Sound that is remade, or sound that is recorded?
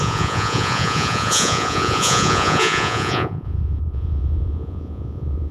remade